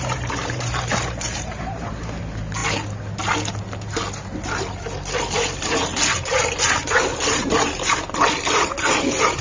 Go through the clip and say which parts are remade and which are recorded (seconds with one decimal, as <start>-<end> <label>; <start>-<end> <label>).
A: 0.0-0.4 recorded; 0.4-2.2 remade; 2.2-9.4 recorded